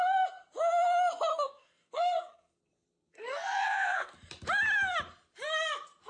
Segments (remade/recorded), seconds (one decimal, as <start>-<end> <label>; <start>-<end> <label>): 0.0-1.3 recorded; 1.3-2.6 remade; 2.6-3.1 recorded; 3.1-4.1 remade; 4.1-6.1 recorded